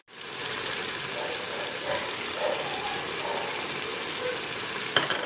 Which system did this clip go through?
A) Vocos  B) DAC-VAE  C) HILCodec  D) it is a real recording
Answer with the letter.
D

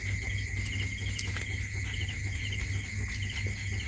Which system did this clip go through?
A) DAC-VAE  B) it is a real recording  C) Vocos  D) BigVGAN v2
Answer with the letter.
B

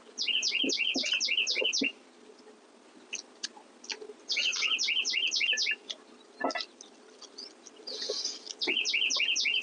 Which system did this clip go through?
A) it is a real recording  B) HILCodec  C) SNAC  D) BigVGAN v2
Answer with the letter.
A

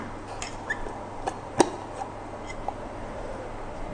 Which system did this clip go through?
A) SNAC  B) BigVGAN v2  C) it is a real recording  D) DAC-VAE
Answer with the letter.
C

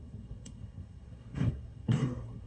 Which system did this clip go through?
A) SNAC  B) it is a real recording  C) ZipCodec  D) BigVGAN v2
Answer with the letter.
A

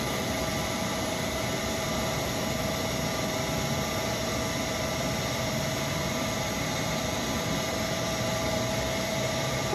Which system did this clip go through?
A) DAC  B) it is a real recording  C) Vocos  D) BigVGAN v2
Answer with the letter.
D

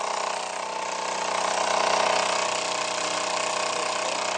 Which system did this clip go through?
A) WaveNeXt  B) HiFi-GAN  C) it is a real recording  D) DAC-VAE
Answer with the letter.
C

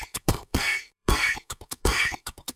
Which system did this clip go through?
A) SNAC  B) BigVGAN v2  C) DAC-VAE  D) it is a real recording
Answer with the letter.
A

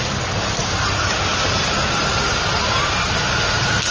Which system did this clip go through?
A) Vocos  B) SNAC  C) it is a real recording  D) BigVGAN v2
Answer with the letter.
C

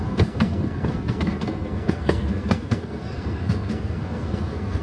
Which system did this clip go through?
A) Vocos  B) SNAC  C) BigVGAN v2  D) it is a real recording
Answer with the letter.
B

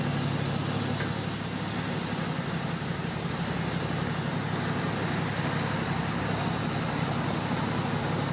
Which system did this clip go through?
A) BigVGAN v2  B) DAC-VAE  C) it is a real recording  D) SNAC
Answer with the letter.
C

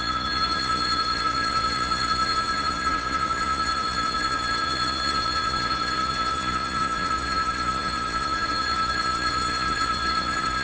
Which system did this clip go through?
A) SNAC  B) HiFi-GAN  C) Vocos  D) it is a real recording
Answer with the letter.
C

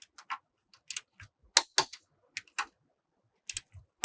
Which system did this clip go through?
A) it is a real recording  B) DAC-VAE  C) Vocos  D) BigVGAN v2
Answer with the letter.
A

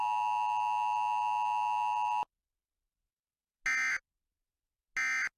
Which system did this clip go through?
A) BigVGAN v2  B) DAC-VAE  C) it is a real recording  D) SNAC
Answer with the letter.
C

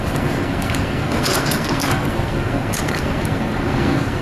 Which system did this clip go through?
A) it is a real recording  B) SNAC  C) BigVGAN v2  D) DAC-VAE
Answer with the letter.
B